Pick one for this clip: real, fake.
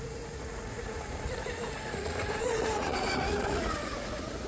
fake